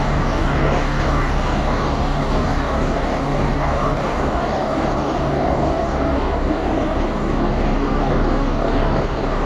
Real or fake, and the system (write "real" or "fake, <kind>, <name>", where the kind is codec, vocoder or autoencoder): fake, codec, DAC